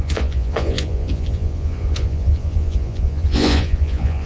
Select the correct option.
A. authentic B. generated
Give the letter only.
B